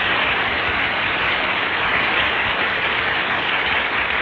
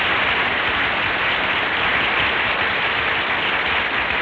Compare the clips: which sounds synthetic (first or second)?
first